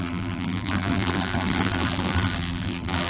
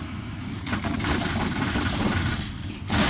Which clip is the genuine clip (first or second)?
second